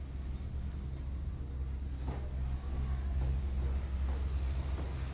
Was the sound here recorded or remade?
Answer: recorded